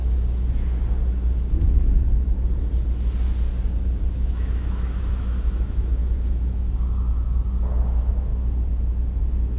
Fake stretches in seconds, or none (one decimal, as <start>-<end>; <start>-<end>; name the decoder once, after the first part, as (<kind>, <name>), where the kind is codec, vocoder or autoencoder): 4.1-6.0 (autoencoder, DAC-VAE); 7.8-8.3

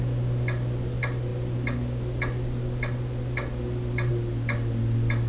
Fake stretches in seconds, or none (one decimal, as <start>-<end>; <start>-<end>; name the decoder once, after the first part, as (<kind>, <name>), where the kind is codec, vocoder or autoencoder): none